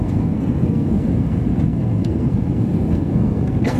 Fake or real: fake